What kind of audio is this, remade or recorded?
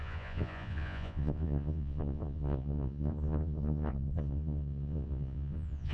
remade